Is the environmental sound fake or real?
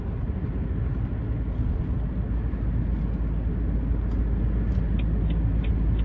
real